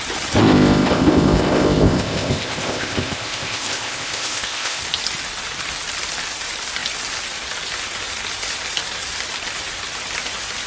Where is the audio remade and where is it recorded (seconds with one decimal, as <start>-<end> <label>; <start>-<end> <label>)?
0.0-0.4 recorded; 0.4-4.8 remade; 4.8-10.7 recorded